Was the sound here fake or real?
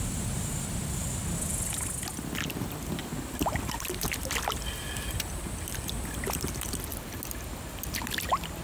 real